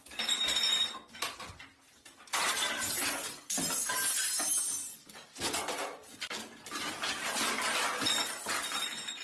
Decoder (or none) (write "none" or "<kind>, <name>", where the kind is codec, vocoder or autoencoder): none